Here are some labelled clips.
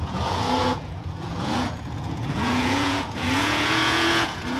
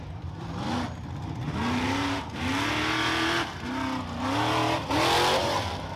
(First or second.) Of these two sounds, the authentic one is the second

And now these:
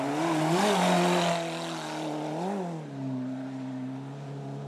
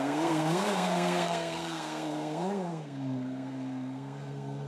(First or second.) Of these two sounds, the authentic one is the first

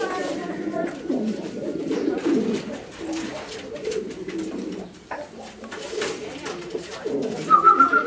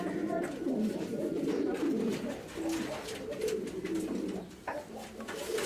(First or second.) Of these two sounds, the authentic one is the second